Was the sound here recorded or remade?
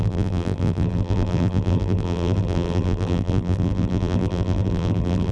remade